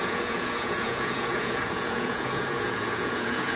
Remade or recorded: remade